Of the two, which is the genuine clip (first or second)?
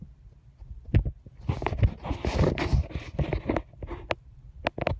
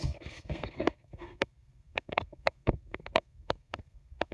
first